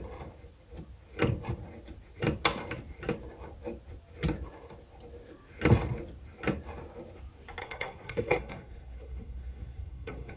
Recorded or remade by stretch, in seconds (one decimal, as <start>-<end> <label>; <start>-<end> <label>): 0.0-7.6 recorded; 7.6-10.4 remade